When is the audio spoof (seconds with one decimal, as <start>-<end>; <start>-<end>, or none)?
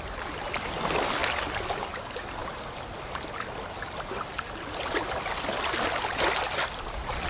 none